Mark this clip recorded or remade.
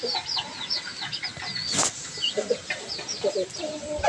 recorded